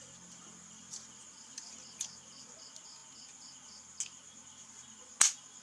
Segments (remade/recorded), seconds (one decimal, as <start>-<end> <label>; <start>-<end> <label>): 0.0-5.6 recorded